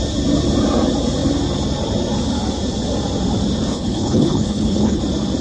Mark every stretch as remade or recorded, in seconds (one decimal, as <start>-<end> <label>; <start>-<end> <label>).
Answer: 0.0-3.7 recorded; 3.7-5.0 remade; 5.0-5.4 recorded